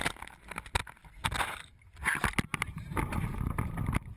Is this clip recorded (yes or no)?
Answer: yes